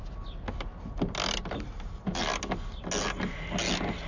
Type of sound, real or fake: real